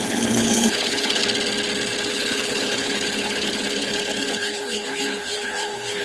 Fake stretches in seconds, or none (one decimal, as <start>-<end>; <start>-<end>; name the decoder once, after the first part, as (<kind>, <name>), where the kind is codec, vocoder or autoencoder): 0.0-1.2 (codec, HILCodec); 2.1-6.0